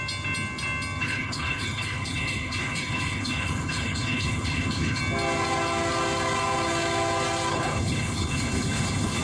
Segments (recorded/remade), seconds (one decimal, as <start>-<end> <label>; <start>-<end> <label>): 0.0-1.0 recorded; 1.0-5.0 remade; 5.0-7.5 recorded; 7.5-9.2 remade